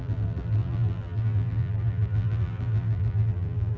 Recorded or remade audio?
remade